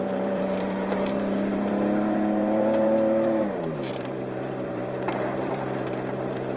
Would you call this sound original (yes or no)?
no